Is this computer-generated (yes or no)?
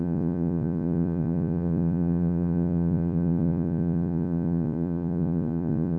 yes